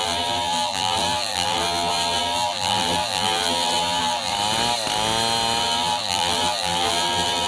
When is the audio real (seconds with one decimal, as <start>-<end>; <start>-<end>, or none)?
4.3-5.6